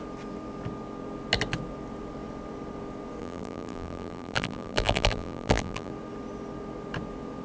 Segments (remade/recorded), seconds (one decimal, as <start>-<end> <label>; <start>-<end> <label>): 0.0-3.2 recorded; 3.2-5.9 remade; 5.9-7.4 recorded